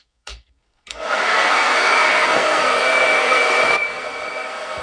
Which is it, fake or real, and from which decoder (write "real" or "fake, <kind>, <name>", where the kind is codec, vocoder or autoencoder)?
fake, codec, SNAC